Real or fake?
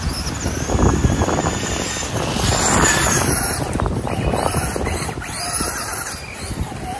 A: real